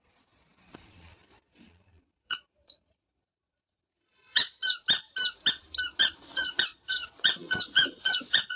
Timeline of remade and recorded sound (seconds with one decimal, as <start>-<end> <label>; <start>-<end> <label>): 0.0-4.6 remade; 4.6-6.1 recorded; 6.1-8.6 remade